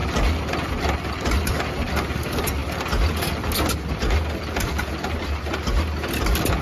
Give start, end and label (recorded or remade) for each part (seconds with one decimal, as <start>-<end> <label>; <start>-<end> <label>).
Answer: 0.0-6.6 recorded

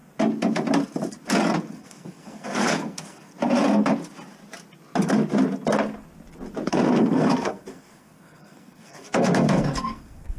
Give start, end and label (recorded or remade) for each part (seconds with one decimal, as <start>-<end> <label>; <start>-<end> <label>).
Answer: 0.0-1.7 recorded; 1.7-3.3 remade; 3.3-6.7 recorded; 6.7-10.4 remade

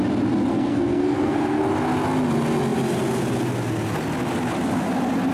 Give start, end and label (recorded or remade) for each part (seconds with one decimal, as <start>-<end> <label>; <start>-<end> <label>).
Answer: 0.0-0.5 recorded; 0.5-1.6 remade; 1.6-5.3 recorded

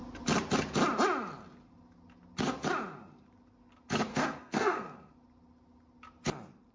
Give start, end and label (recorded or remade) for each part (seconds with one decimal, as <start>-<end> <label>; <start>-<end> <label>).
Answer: 0.0-4.1 recorded; 4.1-5.1 remade; 5.1-6.7 recorded

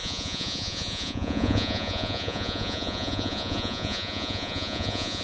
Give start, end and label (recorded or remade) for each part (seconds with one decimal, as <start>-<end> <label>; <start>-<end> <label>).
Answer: 0.0-5.2 remade